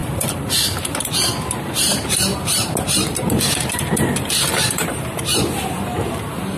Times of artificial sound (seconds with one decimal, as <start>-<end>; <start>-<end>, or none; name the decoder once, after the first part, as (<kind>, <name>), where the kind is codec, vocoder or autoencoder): 0.0-1.1 (vocoder, BigVGAN v2); 2.3-5.4